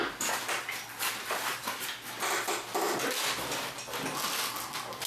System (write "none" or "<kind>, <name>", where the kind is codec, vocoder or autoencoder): none